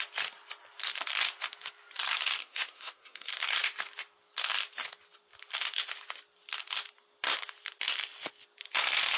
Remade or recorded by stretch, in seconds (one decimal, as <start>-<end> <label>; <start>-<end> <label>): 0.0-2.4 recorded; 2.4-3.3 remade; 3.3-9.2 recorded